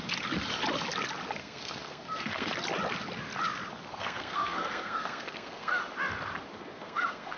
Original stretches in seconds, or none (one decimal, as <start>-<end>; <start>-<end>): 0.0-1.4; 2.5-3.9; 5.8-6.5